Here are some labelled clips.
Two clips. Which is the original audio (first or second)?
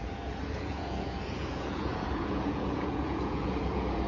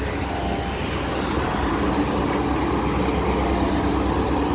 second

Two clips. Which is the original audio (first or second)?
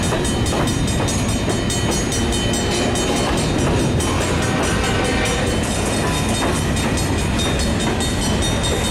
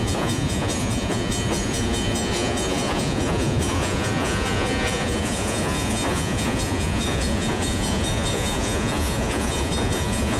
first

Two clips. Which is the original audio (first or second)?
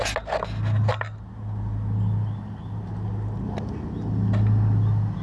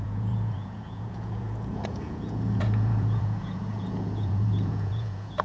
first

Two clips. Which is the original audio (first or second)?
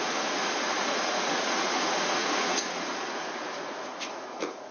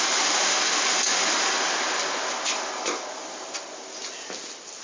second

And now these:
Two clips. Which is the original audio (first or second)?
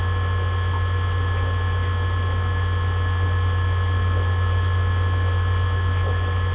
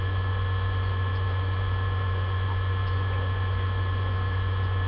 first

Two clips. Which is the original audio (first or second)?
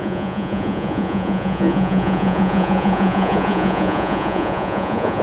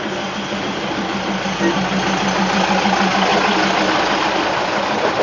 second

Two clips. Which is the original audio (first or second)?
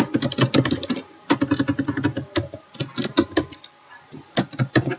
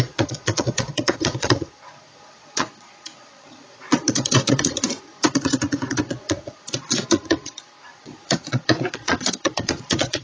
first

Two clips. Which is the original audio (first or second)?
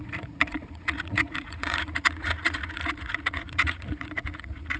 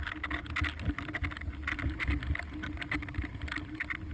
second